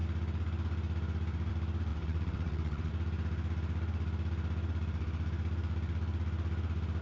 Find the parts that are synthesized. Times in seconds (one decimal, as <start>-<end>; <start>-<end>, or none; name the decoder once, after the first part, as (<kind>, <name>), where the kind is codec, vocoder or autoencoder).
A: 1.9-2.9 (vocoder, WaveNeXt)